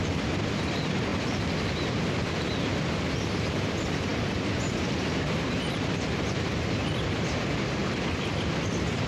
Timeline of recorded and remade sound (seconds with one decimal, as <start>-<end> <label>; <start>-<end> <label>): 0.0-1.1 remade; 1.1-3.5 recorded; 3.5-4.1 remade; 4.1-7.0 recorded; 7.0-9.1 remade